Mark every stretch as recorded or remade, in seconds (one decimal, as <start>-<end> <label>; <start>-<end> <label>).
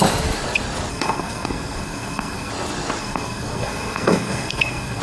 0.0-0.9 recorded; 0.9-2.5 remade; 2.5-3.0 recorded; 3.0-5.0 remade